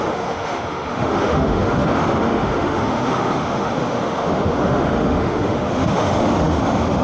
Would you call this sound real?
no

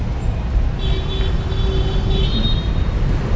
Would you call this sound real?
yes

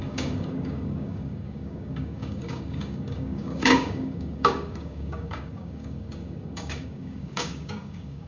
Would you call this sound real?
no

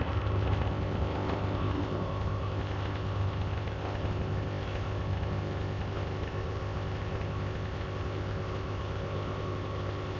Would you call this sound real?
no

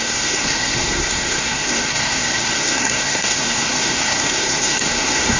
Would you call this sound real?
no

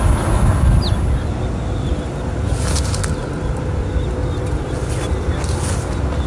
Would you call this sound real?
yes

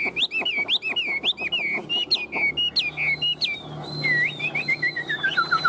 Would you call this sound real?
yes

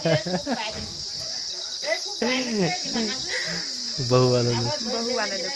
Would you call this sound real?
yes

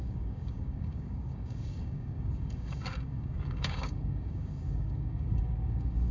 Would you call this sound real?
no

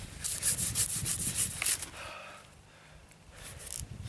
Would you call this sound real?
yes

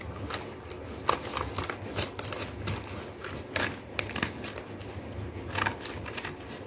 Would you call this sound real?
yes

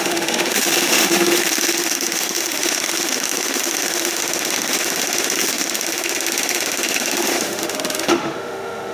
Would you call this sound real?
no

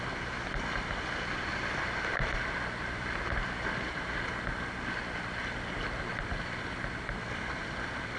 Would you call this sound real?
yes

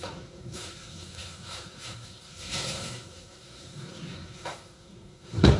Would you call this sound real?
no